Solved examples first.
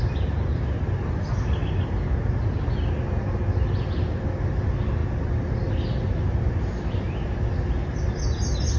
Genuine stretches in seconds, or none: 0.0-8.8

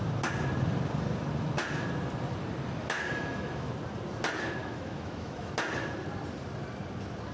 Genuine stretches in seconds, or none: 0.0-2.8; 3.7-4.6; 5.5-7.3